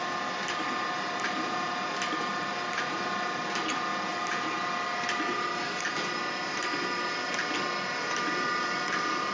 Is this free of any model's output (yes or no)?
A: yes